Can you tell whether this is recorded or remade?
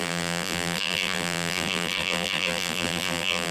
remade